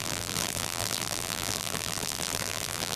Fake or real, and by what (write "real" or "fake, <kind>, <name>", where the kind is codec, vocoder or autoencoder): fake, vocoder, BigVGAN v2